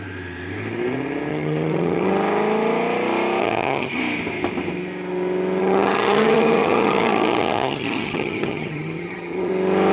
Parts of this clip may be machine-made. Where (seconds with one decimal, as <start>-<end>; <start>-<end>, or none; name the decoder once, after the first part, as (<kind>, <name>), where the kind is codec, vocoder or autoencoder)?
1.3-2.1 (vocoder, HiFi-GAN); 3.4-4.0; 5.6-9.5